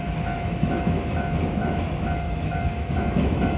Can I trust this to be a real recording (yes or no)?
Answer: no